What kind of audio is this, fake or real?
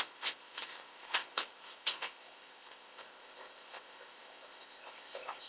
fake